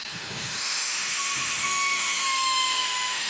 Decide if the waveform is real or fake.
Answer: fake